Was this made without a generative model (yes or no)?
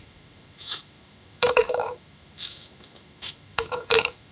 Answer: no